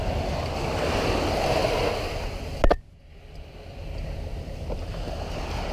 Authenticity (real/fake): real